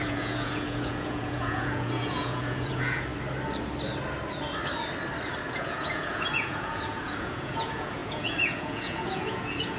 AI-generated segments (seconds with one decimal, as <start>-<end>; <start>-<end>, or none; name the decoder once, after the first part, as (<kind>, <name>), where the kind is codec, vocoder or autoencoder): 0.0-3.1 (vocoder, Vocos); 5.5-9.8